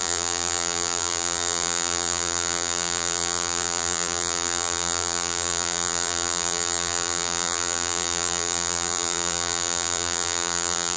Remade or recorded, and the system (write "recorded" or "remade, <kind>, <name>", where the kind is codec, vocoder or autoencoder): remade, vocoder, BigVGAN v2